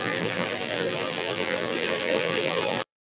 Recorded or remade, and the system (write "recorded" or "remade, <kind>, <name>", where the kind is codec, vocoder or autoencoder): remade, vocoder, BigVGAN v2